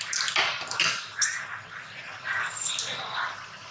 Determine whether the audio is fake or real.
real